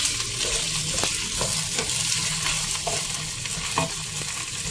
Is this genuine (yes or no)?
yes